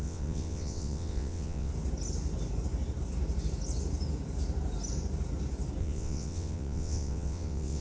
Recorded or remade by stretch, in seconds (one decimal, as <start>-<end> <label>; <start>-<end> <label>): 0.0-1.7 remade; 1.7-5.8 recorded; 5.8-7.8 remade